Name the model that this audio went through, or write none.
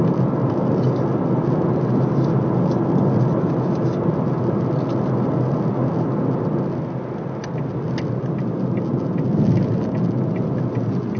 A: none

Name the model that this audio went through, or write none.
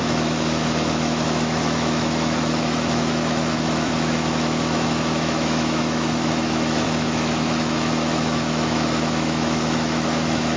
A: autoencoder, DAC-VAE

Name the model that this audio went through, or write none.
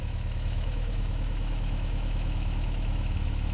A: autoencoder, DAC-VAE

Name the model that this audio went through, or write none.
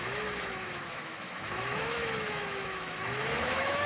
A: autoencoder, DAC-VAE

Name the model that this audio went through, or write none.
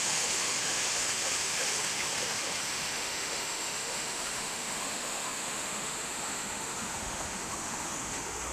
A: autoencoder, DAC-VAE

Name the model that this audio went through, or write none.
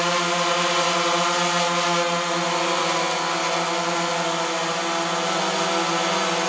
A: none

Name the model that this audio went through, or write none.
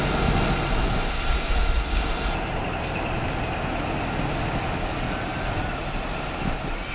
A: none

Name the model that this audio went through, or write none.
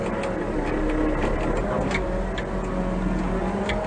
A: none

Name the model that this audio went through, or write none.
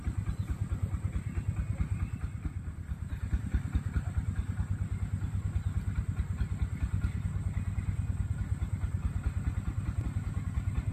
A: none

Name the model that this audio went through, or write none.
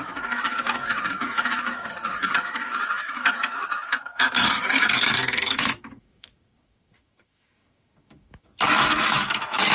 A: autoencoder, DAC-VAE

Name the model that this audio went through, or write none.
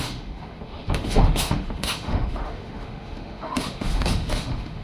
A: autoencoder, DAC-VAE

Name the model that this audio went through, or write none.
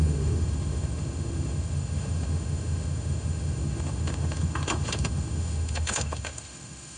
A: autoencoder, DAC-VAE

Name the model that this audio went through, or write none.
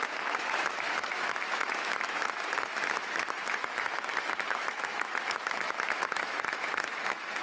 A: autoencoder, DAC-VAE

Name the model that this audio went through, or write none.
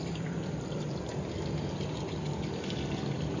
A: none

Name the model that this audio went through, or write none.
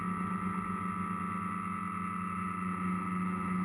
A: none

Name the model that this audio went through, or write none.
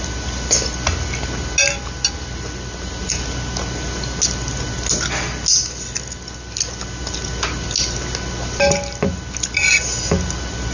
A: none